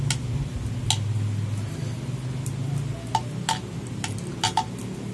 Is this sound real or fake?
real